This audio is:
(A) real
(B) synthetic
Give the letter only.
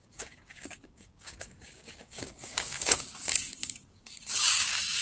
B